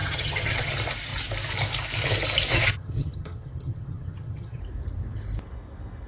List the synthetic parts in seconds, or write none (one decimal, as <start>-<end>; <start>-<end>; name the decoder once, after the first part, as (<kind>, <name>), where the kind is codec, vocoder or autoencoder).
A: 0.0-0.7 (vocoder, HiFi-GAN); 2.5-4.6